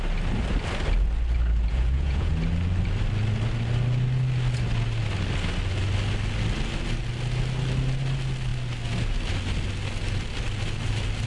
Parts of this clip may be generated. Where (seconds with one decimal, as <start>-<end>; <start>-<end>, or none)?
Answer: 1.7-2.3